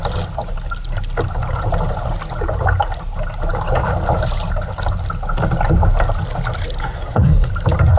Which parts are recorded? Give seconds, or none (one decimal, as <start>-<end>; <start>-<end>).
0.0-6.8; 7.5-8.0